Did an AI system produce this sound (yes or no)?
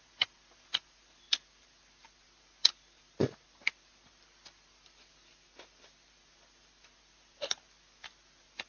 no